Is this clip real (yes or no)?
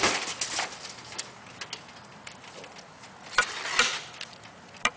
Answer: yes